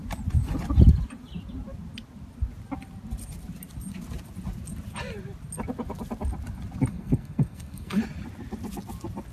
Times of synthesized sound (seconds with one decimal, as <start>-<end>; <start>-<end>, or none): 6.9-8.0